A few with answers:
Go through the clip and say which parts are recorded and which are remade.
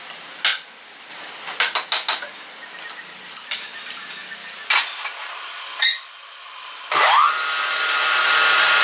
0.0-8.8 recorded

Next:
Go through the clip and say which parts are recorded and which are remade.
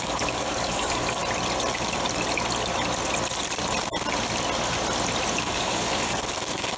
0.0-1.2 remade; 1.2-5.3 recorded; 5.3-6.8 remade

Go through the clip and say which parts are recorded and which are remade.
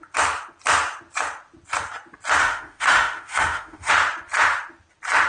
0.0-2.4 recorded; 2.4-3.9 remade; 3.9-5.3 recorded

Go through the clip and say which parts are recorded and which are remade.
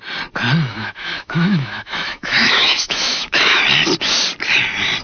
0.0-0.7 recorded; 0.7-3.6 remade; 3.6-5.0 recorded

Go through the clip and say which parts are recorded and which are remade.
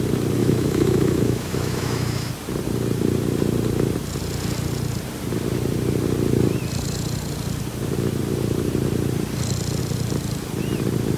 0.0-0.4 recorded; 0.4-2.3 remade; 2.3-11.2 recorded